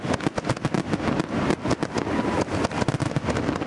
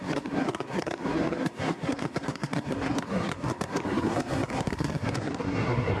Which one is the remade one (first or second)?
second